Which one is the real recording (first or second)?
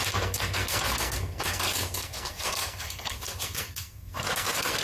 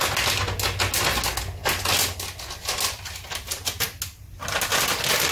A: second